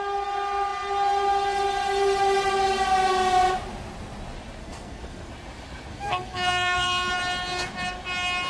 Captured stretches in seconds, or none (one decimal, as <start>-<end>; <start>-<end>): 0.0-4.6; 5.3-5.9; 7.1-8.5